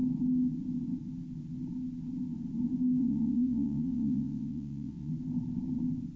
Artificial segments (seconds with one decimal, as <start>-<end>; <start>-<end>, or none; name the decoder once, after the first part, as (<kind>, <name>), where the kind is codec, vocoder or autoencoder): 3.0-5.1 (vocoder, WaveNeXt)